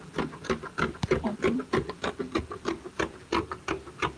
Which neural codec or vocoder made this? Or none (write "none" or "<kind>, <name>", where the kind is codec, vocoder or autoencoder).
none